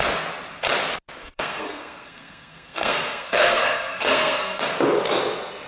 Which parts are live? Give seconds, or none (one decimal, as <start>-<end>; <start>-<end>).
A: 0.0-1.2; 4.6-5.7